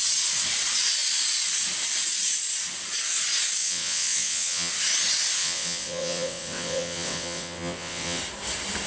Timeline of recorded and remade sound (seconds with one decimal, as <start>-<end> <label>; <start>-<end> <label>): 0.0-3.6 recorded; 3.6-4.7 remade; 4.7-5.4 recorded; 5.4-8.2 remade; 8.2-8.9 recorded